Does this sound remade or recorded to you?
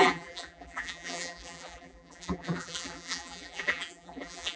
remade